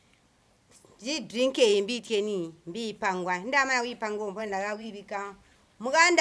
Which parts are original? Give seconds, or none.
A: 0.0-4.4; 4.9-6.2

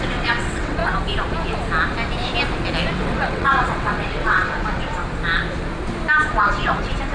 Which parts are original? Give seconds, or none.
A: 0.8-2.9; 5.0-6.3

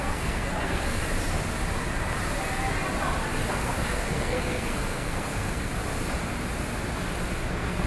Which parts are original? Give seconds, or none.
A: 1.0-3.5; 5.7-7.5

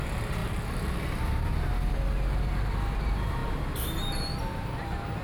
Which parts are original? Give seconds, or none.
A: 0.0-0.4; 1.7-5.2

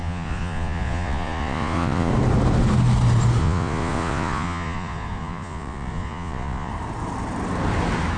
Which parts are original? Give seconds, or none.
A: 2.1-3.4; 6.7-8.2

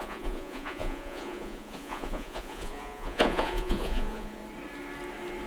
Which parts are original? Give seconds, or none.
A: 4.4-5.5

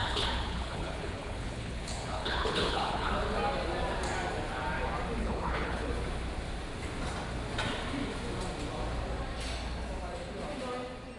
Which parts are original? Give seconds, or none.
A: 3.1-5.2; 5.9-11.2